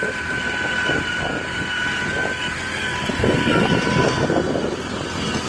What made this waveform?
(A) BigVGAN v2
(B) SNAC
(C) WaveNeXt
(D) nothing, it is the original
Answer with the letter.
D